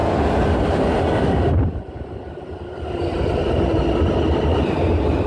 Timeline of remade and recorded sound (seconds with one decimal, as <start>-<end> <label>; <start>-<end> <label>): 0.0-5.3 recorded

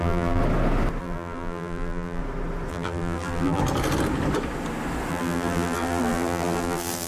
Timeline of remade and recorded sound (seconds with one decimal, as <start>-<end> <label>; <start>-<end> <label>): 0.0-0.4 remade; 0.4-1.0 recorded; 1.0-2.2 remade; 2.2-2.7 recorded; 2.7-3.6 remade; 3.6-5.1 recorded; 5.1-7.1 remade

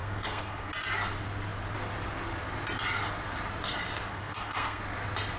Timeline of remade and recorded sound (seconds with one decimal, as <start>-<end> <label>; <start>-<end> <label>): 0.0-0.7 remade; 0.7-4.1 recorded; 4.1-4.8 remade; 4.8-5.4 recorded

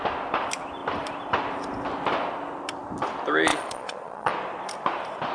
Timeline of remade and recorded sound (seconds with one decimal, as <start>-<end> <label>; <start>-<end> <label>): 0.0-3.5 recorded; 3.5-4.3 remade; 4.3-5.3 recorded